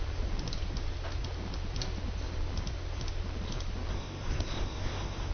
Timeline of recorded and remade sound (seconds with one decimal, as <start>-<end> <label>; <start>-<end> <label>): 0.0-3.9 recorded; 3.9-5.3 remade